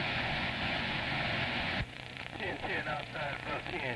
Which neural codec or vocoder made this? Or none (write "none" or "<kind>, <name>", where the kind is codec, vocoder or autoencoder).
vocoder, Vocos